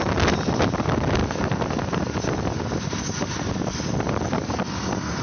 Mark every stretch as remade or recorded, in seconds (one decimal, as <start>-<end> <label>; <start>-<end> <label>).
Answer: 0.0-5.2 recorded